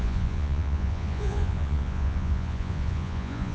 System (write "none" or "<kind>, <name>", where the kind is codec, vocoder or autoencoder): vocoder, Vocos